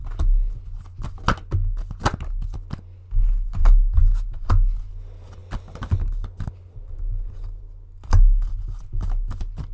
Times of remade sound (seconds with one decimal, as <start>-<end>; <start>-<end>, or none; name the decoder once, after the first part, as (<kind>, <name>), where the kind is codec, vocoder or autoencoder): none